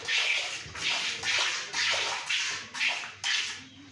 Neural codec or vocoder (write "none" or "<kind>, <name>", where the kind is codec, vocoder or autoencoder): none